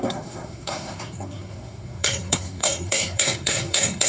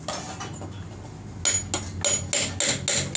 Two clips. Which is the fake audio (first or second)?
first